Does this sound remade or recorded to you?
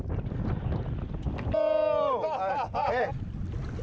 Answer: recorded